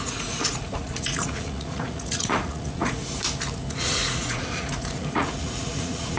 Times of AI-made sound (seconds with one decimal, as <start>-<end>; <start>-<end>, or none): 0.0-3.0; 3.7-6.2